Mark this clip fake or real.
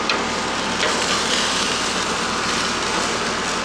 real